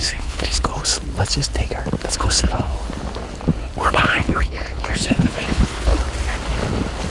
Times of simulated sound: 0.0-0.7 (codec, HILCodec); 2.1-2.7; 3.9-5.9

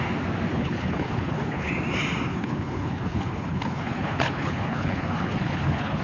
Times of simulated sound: 0.5-1.7 (codec, HILCodec); 2.3-6.0

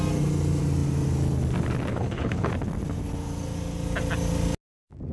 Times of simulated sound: 1.9-2.5 (codec, HILCodec)